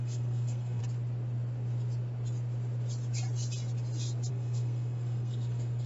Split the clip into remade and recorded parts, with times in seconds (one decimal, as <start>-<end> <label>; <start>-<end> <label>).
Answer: 0.0-0.8 remade; 0.8-4.3 recorded; 4.3-5.9 remade